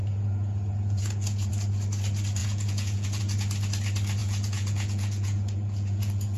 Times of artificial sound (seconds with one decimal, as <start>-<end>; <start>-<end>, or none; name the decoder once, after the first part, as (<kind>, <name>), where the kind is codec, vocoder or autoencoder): 0.0-1.5 (vocoder, Vocos); 2.4-3.2; 4.2-6.4